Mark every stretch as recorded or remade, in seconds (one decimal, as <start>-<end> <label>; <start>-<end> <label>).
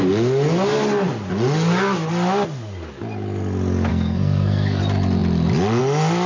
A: 0.0-3.9 recorded; 3.9-4.8 remade; 4.8-6.3 recorded